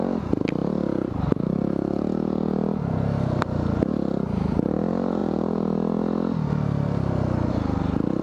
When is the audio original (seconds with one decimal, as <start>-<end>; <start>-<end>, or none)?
0.0-8.2